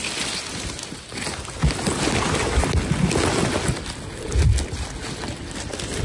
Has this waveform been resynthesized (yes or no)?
no